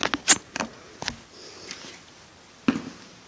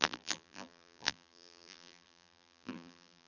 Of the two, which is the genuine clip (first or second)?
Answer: first